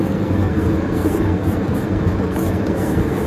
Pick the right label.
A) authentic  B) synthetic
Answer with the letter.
B